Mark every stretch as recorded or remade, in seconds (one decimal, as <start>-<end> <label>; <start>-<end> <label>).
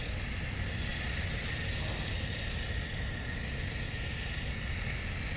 0.0-5.4 recorded